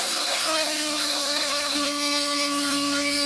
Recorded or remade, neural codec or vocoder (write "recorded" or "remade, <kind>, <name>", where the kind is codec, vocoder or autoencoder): remade, codec, SNAC